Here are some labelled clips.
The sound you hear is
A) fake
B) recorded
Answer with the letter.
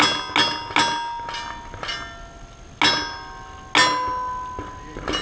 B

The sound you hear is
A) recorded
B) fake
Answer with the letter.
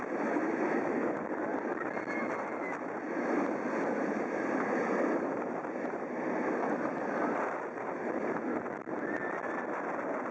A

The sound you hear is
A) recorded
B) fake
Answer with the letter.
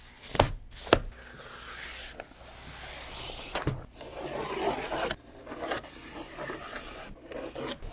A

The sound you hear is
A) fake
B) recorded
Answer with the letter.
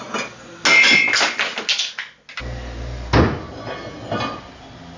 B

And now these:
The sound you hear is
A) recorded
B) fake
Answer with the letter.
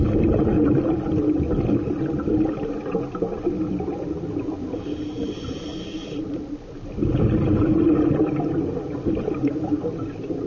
A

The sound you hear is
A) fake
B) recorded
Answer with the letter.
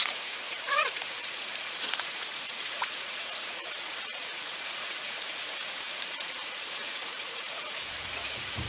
A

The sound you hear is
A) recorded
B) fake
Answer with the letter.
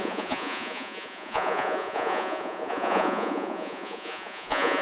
B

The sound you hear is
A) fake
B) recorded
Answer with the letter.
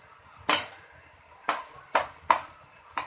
B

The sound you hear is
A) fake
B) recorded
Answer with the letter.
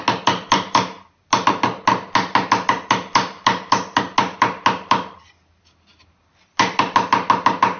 B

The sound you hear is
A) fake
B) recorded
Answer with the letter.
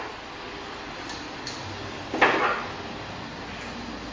B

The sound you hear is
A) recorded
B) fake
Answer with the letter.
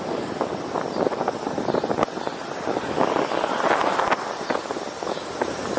A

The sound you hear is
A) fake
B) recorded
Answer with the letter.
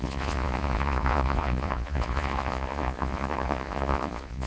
A